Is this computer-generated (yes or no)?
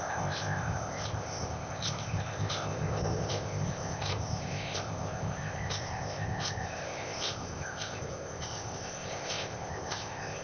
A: yes